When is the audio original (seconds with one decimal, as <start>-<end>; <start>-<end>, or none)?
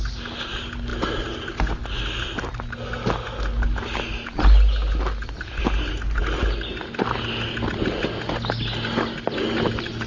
0.0-10.1